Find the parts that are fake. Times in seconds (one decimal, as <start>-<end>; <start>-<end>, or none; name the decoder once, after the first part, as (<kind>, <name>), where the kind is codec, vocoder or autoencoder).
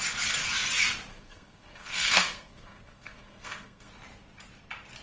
1.1-3.9 (codec, SNAC)